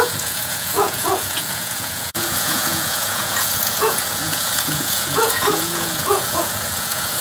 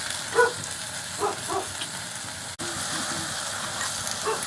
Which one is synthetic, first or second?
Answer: first